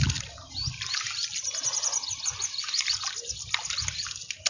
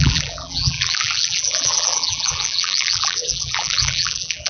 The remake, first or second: second